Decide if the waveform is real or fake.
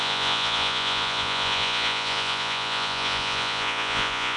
fake